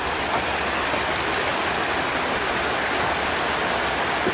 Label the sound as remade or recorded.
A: recorded